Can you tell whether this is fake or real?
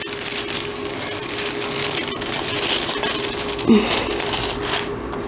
real